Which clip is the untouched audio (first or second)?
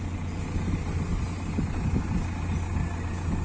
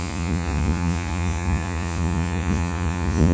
first